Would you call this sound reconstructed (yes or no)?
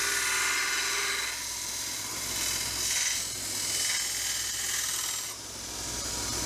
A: no